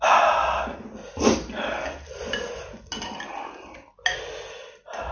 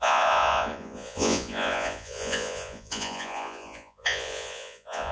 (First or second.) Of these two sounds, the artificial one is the second